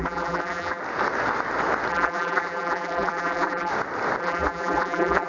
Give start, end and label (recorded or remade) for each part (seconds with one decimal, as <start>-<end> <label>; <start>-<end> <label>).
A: 0.0-0.8 remade; 0.8-1.9 recorded; 1.9-3.7 remade; 3.7-4.2 recorded; 4.2-5.3 remade